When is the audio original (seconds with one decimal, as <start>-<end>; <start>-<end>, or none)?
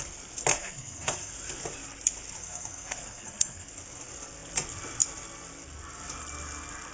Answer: 0.0-0.5; 1.3-2.4; 3.7-6.9